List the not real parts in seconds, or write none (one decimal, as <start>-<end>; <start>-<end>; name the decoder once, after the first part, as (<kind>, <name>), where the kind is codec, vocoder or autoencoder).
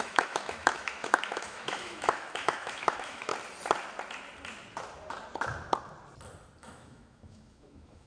0.0-3.3 (autoencoder, DAC-VAE); 6.6-8.1